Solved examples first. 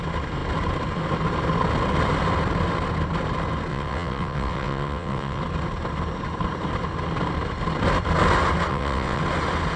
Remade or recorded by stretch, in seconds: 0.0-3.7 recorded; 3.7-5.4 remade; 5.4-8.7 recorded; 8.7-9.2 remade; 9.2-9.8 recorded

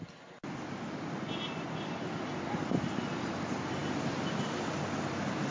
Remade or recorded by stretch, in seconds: 0.0-5.5 recorded

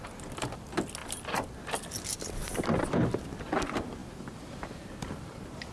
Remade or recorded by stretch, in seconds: 0.0-1.0 recorded; 1.0-2.3 remade; 2.3-5.7 recorded

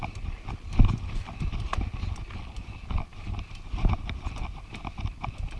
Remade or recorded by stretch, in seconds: 0.0-5.6 recorded

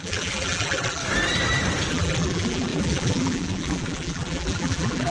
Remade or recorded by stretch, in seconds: 0.0-1.0 remade; 1.0-1.9 recorded; 1.9-5.1 remade

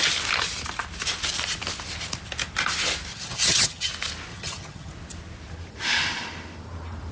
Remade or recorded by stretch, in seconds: 0.0-3.1 recorded; 3.1-3.9 remade; 3.9-4.3 recorded; 4.3-4.9 remade; 4.9-7.1 recorded